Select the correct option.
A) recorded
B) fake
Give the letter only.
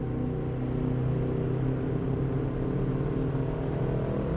A